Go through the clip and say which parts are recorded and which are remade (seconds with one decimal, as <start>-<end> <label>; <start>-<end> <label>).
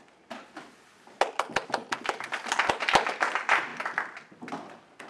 0.0-5.1 recorded